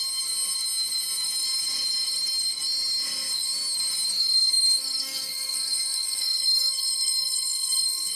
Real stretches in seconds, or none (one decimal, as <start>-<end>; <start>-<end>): 0.0-4.1